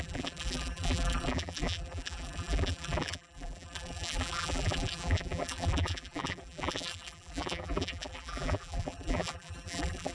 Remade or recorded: remade